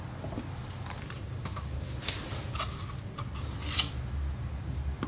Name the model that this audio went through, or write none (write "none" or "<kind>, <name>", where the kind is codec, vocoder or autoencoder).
none